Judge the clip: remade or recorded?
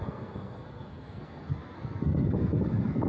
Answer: remade